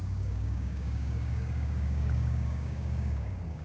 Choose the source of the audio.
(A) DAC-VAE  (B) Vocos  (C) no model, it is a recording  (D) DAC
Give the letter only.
D